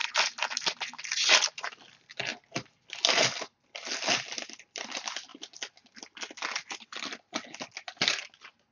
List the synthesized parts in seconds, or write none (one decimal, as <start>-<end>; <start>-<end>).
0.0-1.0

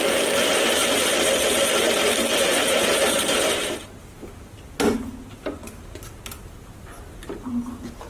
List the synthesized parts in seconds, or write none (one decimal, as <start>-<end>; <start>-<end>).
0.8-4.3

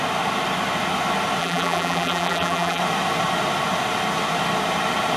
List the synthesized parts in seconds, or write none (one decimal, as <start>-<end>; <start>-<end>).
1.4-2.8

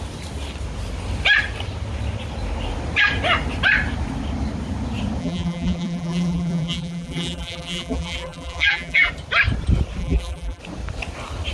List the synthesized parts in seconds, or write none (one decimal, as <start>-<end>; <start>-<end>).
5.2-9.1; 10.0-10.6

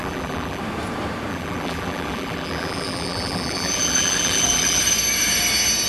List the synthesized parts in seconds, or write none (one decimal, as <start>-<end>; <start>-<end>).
0.0-0.6; 1.3-4.8

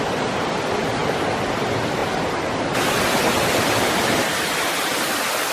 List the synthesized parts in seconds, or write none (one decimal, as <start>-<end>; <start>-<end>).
0.0-1.0; 1.5-2.0; 4.2-5.5